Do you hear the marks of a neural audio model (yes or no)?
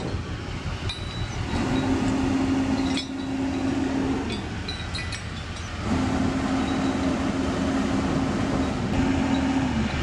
no